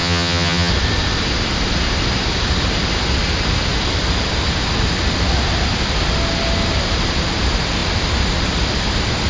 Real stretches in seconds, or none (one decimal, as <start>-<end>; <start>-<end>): 0.7-9.3